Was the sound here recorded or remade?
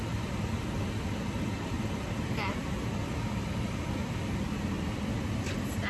recorded